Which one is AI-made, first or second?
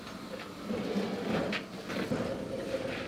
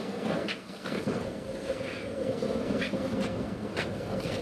second